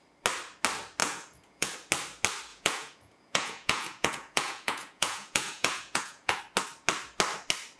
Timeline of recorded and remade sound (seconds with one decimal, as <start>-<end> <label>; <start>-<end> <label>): 0.0-1.0 recorded; 1.0-1.7 remade; 1.7-2.5 recorded; 2.5-6.4 remade; 6.4-7.8 recorded